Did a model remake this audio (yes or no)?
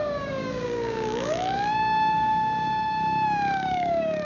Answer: yes